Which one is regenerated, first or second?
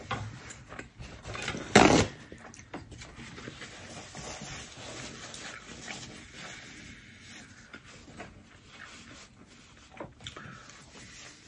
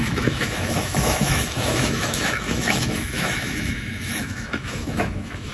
second